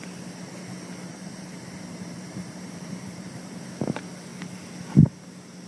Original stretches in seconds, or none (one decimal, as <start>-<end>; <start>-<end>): 0.0-1.1; 3.6-5.7